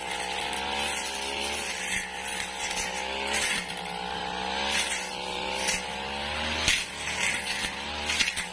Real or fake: real